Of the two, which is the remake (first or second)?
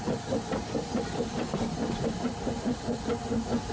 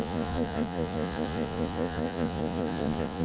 second